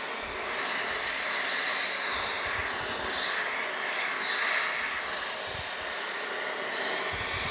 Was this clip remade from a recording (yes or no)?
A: no